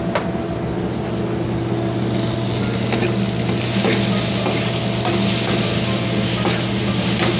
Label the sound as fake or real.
real